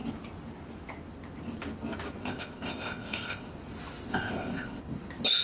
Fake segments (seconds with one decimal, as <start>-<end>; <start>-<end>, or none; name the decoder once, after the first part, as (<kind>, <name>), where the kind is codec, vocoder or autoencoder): 2.2-3.5 (codec, ZipCodec); 4.1-4.8